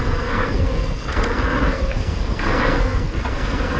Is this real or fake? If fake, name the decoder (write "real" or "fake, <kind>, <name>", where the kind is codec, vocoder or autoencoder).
fake, codec, SNAC